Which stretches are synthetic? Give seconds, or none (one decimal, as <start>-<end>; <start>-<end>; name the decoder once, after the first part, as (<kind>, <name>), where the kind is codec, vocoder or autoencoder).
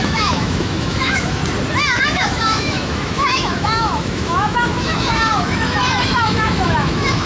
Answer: 0.0-1.4 (autoencoder, DAC-VAE); 2.0-7.3